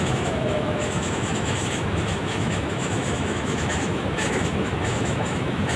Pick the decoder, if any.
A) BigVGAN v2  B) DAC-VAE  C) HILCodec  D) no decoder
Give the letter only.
B